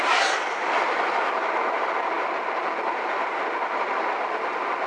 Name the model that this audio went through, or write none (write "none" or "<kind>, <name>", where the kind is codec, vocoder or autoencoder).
vocoder, BigVGAN v2